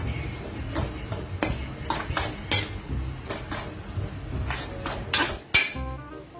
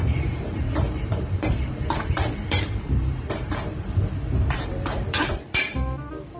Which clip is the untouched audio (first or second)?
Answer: first